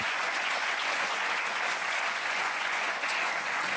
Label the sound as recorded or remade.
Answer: remade